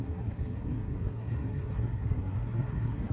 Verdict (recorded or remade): remade